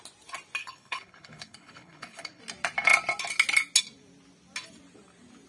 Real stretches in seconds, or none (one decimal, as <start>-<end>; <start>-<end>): 0.0-0.6; 2.4-5.5